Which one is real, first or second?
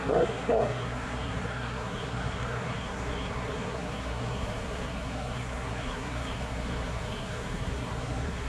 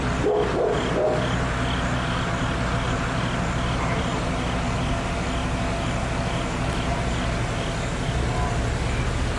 second